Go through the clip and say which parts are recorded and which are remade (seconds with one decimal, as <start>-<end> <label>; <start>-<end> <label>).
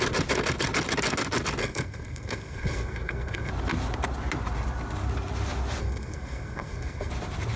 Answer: 0.0-1.6 recorded; 1.6-3.5 remade; 3.5-5.8 recorded; 5.8-7.1 remade; 7.1-7.6 recorded